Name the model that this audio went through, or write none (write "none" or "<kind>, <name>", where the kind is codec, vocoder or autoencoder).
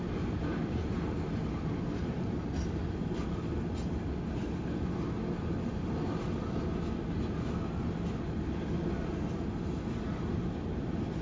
none